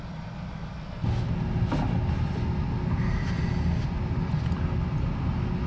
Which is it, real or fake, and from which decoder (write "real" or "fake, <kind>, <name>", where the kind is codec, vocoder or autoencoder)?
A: real